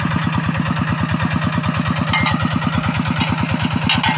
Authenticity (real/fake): real